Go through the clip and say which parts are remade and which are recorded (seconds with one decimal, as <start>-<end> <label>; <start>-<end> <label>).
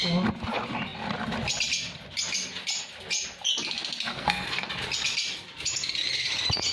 0.0-4.1 recorded; 4.1-4.7 remade; 4.7-6.7 recorded